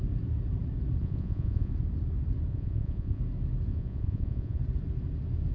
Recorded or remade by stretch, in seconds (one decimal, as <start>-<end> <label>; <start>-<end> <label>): 0.0-1.0 recorded; 1.0-1.7 remade; 1.7-2.5 recorded; 2.5-3.2 remade; 3.2-3.7 recorded; 3.7-4.6 remade; 4.6-5.5 recorded